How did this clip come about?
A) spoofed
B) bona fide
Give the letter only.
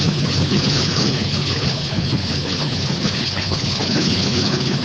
A